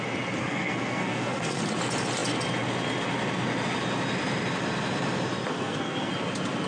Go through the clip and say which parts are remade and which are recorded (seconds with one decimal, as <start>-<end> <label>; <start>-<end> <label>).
0.0-0.4 recorded; 0.4-1.6 remade; 1.6-5.5 recorded; 5.5-6.1 remade; 6.1-6.7 recorded